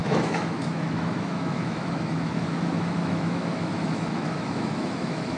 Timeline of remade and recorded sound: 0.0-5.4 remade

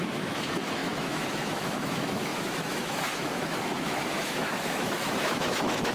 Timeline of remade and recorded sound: 0.0-5.9 remade

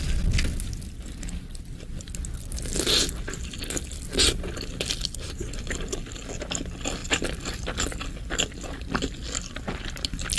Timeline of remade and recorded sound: 0.0-10.4 recorded

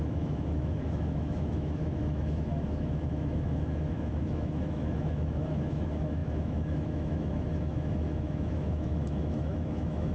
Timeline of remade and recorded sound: 0.0-10.1 remade

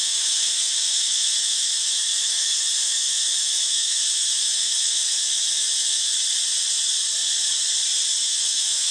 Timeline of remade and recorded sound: 0.0-6.1 remade; 6.1-8.2 recorded; 8.2-8.9 remade

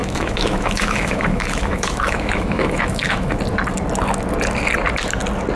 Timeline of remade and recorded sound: 0.0-3.4 remade; 3.4-5.6 recorded